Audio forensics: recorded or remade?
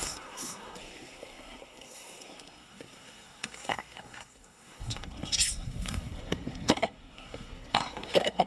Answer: remade